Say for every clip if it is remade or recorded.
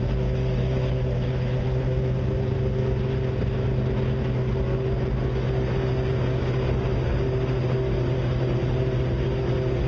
recorded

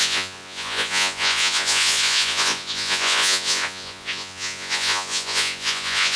remade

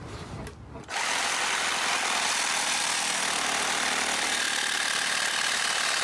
recorded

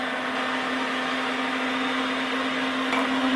recorded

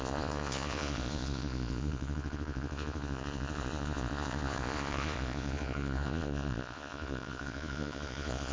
remade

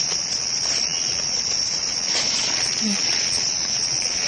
remade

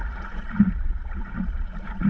remade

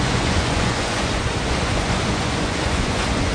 remade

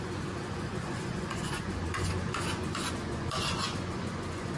remade